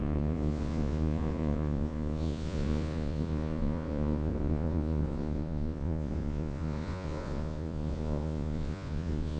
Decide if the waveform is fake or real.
fake